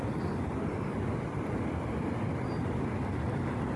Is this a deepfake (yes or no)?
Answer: no